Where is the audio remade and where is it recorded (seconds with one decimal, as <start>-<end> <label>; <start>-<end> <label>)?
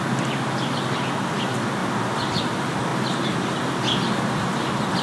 0.0-5.0 recorded